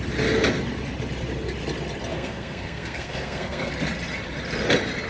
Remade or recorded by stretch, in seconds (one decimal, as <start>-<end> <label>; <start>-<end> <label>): 0.0-2.1 recorded; 2.1-3.7 remade; 3.7-5.1 recorded